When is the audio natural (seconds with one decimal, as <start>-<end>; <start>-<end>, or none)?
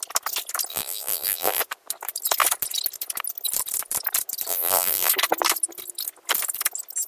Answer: 0.0-0.7; 1.6-4.5; 5.1-7.1